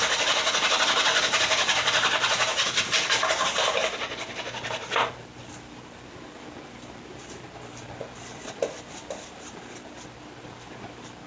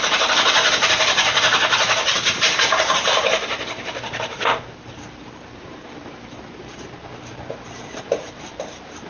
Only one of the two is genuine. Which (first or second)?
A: first